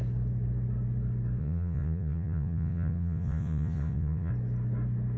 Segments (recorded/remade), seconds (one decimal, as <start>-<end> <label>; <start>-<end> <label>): 0.0-1.4 recorded; 1.4-4.3 remade; 4.3-5.2 recorded